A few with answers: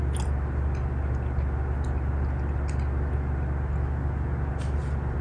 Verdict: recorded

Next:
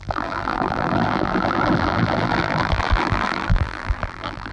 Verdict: remade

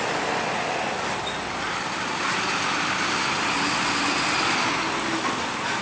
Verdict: recorded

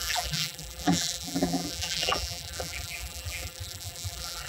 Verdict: remade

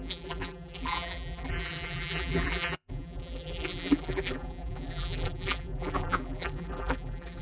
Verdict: remade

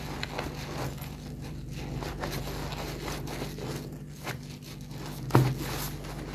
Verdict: recorded